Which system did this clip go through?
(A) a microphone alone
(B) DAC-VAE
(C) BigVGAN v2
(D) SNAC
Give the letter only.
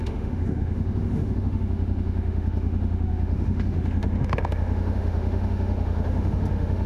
B